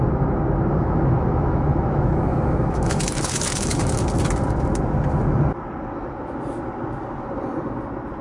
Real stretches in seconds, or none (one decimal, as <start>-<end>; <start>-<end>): 0.0-0.7; 4.0-8.2